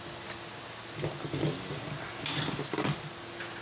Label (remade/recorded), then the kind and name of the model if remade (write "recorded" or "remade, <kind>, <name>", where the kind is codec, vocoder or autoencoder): recorded